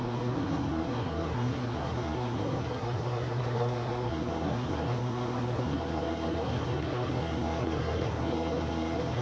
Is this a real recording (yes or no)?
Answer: no